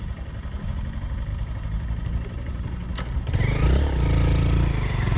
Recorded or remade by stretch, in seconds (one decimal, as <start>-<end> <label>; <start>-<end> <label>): 0.0-5.2 recorded